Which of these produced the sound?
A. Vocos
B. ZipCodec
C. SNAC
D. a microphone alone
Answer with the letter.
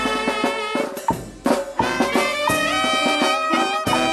D